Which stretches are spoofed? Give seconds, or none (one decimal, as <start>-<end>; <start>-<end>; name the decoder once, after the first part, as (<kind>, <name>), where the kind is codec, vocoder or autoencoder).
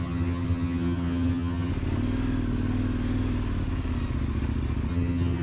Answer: 0.0-1.7 (vocoder, HiFi-GAN); 4.9-5.4